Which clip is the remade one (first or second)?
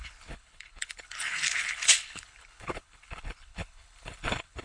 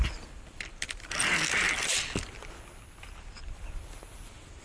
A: first